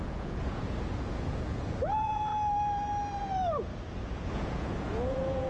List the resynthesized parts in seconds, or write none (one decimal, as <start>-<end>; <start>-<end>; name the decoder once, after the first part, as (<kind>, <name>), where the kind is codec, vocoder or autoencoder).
0.0-2.3 (vocoder, Vocos); 3.2-5.5